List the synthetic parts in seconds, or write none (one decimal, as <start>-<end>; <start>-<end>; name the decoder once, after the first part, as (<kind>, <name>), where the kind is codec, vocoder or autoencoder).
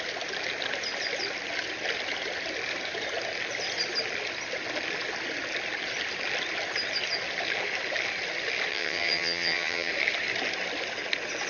8.7-9.9 (vocoder, HiFi-GAN)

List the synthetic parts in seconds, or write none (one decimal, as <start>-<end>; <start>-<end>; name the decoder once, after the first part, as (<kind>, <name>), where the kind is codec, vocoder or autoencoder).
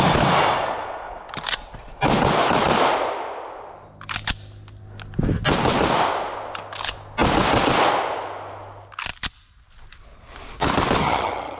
11.0-11.6 (vocoder, HiFi-GAN)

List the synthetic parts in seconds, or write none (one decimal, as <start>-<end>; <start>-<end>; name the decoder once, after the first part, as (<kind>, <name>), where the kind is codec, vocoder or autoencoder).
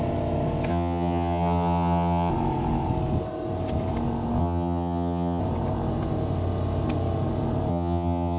0.7-2.3 (vocoder, HiFi-GAN); 4.4-5.4; 7.7-8.4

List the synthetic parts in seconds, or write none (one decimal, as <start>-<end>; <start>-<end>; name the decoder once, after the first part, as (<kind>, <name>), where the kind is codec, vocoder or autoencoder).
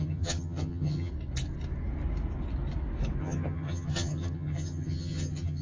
0.0-1.1 (vocoder, HiFi-GAN); 3.2-5.6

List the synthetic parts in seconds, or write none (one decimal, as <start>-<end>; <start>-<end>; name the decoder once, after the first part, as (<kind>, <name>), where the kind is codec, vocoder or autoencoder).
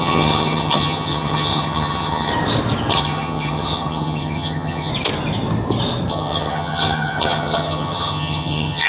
0.0-2.3 (vocoder, HiFi-GAN); 2.9-4.9; 6.1-8.9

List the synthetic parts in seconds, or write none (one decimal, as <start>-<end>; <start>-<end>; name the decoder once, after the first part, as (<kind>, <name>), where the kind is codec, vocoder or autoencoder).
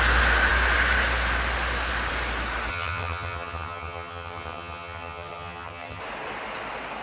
2.7-6.0 (vocoder, HiFi-GAN)